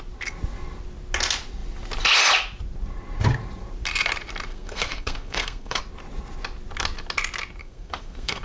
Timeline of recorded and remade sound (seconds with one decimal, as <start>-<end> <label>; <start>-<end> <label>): 0.0-4.5 recorded; 4.5-5.8 remade; 5.8-7.6 recorded; 7.6-8.4 remade